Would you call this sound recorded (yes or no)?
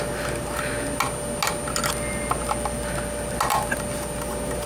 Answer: yes